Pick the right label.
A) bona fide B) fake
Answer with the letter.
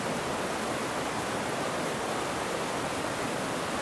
A